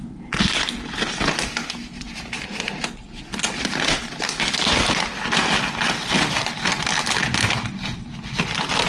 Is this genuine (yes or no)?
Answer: yes